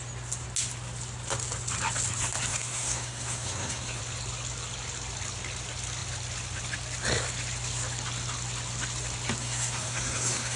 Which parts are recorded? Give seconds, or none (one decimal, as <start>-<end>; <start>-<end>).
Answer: 0.0-2.5; 4.0-9.4